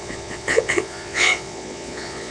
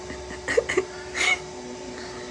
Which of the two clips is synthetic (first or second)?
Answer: first